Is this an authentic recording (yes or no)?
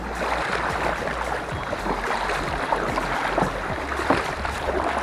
yes